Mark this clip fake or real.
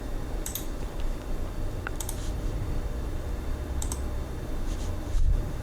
fake